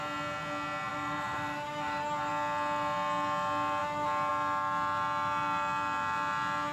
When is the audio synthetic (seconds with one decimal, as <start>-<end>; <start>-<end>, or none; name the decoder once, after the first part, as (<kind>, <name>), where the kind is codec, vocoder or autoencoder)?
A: 0.9-2.3 (vocoder, BigVGAN v2)